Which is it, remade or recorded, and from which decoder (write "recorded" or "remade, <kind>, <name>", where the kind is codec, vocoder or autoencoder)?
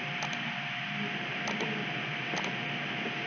recorded